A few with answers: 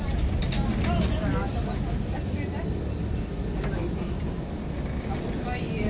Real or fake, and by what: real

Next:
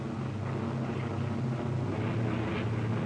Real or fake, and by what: real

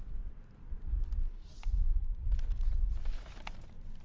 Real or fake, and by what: real